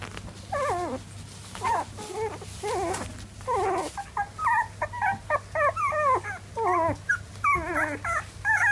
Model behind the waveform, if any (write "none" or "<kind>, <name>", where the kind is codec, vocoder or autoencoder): none